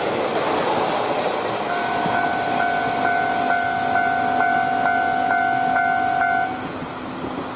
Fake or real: real